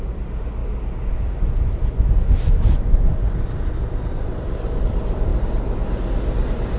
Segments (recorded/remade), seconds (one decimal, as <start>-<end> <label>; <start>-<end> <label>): 0.0-0.6 remade; 0.6-2.6 recorded; 2.6-6.8 remade